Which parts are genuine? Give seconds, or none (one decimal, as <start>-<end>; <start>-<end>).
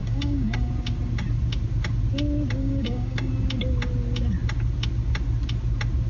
0.7-2.6; 3.3-6.1